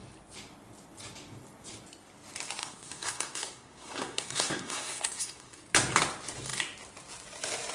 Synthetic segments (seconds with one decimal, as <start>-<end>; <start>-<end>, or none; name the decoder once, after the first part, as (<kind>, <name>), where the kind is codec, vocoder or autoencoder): 2.6-5.6 (codec, SNAC)